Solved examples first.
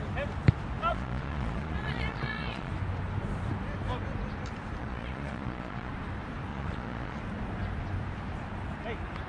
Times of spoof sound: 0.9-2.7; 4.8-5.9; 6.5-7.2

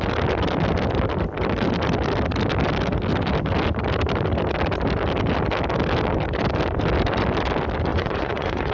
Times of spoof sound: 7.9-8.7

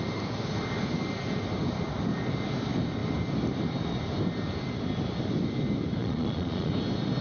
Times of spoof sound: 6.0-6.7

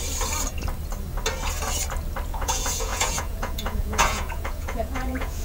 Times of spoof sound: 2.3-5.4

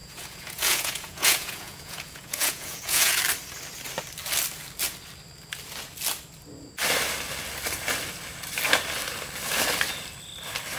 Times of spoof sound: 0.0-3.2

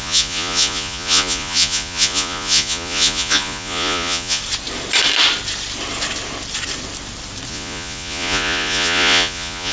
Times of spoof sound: 0.0-4.4; 7.5-9.7

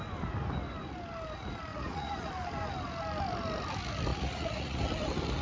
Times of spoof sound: 1.7-2.3; 4.1-4.8

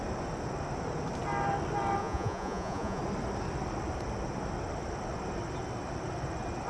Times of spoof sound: 2.0-3.0